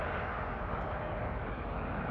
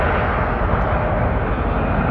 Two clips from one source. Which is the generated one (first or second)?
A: first